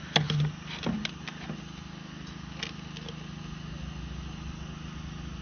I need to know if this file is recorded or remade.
recorded